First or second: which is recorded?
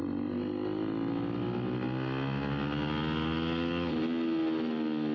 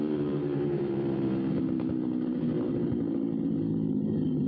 first